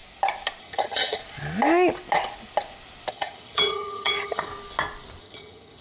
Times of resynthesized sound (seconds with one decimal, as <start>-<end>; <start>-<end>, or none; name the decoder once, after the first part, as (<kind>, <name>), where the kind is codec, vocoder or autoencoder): 0.6-1.2 (vocoder, HiFi-GAN); 3.1-4.5; 5.2-5.8